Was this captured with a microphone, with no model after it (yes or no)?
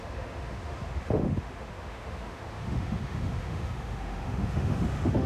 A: no